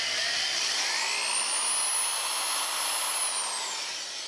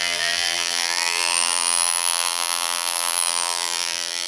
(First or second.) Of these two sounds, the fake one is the second